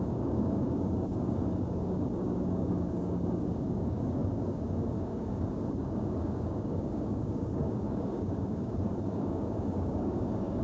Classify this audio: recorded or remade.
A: remade